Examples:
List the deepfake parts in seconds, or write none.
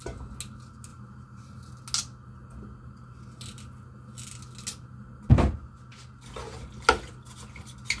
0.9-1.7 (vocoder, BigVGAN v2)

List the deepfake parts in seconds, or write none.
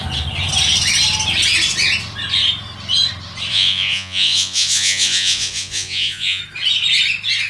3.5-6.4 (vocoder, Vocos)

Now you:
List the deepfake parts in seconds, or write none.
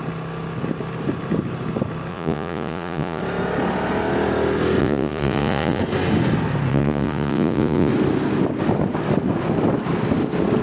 2.1-3.2 (vocoder, Vocos); 4.8-5.8; 6.7-7.9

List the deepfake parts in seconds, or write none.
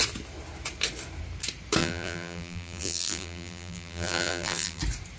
1.8-4.8 (vocoder, BigVGAN v2)